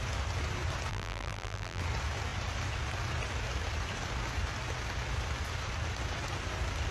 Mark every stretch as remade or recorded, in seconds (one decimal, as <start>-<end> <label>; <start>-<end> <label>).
0.0-0.9 recorded; 0.9-1.8 remade; 1.8-6.9 recorded